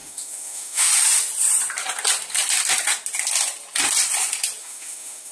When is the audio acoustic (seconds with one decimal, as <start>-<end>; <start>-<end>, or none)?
0.9-4.6